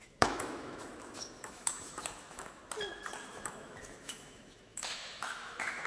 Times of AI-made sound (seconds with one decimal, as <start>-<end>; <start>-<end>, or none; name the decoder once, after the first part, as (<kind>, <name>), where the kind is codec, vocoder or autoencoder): 0.0-2.6 (autoencoder, DAC-VAE); 3.3-5.9